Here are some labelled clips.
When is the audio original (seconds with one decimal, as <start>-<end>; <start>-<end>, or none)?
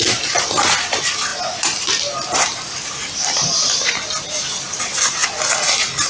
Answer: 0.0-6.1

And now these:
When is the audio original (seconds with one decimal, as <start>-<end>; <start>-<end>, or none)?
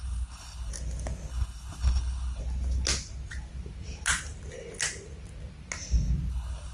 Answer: 0.7-1.3; 2.4-6.3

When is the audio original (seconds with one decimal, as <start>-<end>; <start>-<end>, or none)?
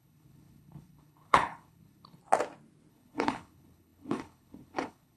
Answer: 2.2-2.9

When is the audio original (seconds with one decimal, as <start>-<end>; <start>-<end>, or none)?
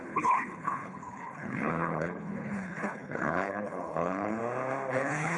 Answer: 4.4-4.9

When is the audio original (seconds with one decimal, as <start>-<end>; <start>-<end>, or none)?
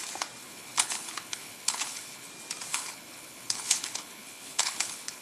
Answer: 0.0-0.4; 2.3-2.7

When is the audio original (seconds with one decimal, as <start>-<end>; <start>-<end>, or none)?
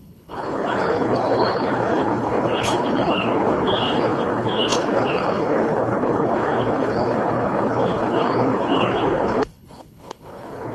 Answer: none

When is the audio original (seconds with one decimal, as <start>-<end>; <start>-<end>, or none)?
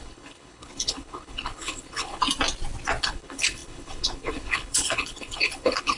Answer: 2.2-3.0